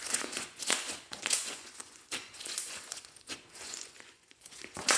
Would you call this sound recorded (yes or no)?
no